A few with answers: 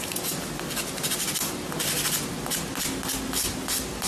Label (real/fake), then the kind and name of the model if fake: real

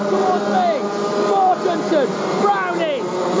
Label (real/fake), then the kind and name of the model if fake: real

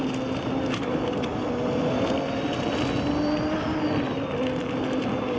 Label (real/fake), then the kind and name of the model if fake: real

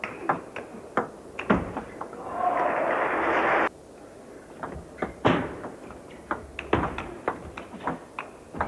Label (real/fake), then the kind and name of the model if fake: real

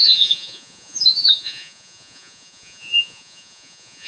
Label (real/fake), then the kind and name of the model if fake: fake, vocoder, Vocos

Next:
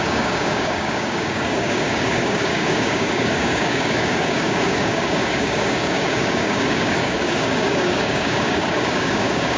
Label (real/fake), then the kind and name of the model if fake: fake, codec, DAC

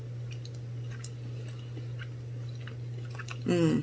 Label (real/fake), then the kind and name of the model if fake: real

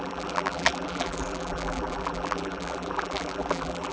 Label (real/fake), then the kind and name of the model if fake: fake, vocoder, BigVGAN v2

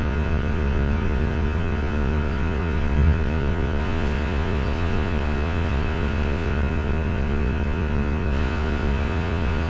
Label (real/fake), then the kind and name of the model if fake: fake, vocoder, Vocos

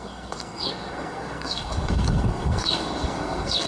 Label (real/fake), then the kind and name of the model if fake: fake, codec, SNAC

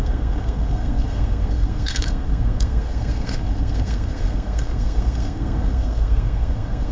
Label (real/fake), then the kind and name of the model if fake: fake, codec, SNAC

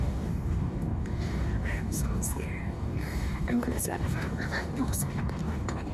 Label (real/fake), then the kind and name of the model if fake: fake, codec, DAC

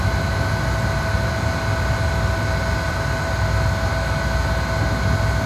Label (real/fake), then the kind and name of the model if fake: real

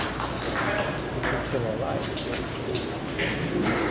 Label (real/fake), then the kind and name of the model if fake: real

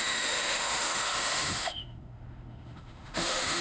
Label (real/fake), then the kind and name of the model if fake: fake, autoencoder, DAC-VAE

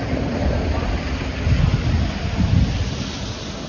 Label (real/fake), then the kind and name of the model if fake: real